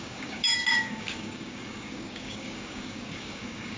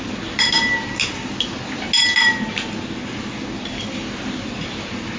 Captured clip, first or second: second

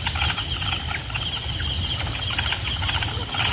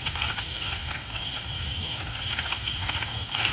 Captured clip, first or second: first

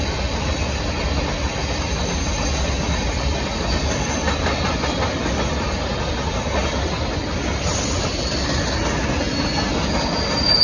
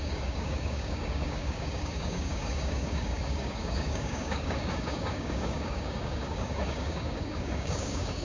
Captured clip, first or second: first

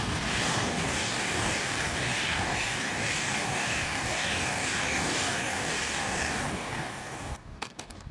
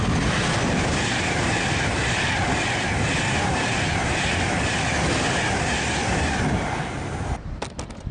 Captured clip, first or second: second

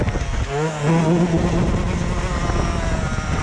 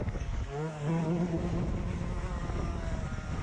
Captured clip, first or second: first